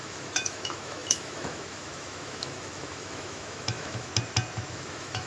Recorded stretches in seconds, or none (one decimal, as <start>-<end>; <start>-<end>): 4.1-4.7